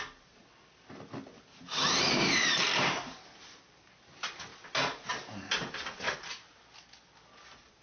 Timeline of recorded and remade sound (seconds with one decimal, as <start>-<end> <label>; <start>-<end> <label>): 0.0-1.7 recorded; 1.7-4.0 remade; 4.0-7.8 recorded